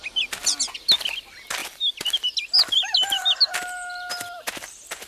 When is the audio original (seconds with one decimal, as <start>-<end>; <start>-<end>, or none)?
0.0-5.1